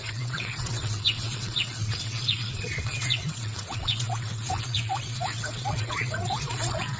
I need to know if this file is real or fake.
fake